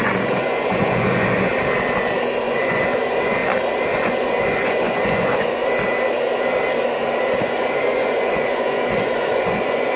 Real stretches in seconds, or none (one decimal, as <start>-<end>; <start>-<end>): 1.5-2.4; 3.4-3.9; 5.6-7.4